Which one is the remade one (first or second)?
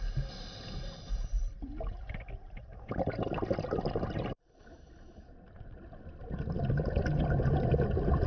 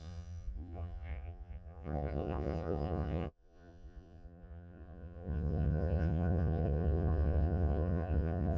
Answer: second